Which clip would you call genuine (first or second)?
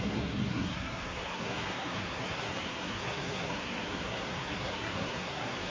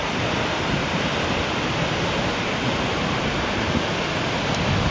second